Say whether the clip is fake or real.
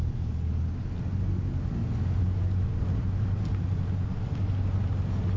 real